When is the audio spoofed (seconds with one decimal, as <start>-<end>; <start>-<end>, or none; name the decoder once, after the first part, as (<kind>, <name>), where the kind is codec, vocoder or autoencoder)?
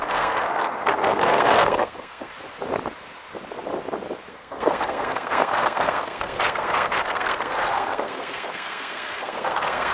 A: 0.0-2.3 (codec, SNAC); 4.3-9.9